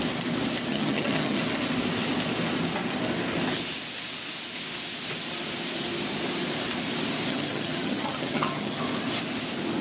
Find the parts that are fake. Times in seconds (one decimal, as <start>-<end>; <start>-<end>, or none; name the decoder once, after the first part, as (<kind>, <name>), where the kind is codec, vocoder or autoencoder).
0.7-1.4 (vocoder, HiFi-GAN); 7.3-8.8